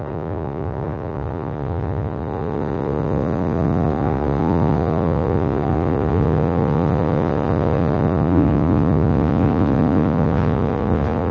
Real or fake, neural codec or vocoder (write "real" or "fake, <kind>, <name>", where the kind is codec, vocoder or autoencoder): fake, vocoder, Vocos